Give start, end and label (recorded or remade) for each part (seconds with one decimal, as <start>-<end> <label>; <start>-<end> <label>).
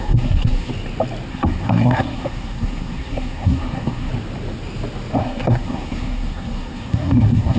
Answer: 0.0-0.7 remade; 0.7-1.3 recorded; 1.3-4.1 remade; 4.1-5.2 recorded; 5.2-7.6 remade